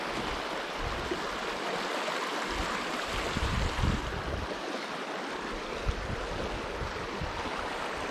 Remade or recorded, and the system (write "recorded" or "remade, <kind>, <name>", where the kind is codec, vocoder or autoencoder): recorded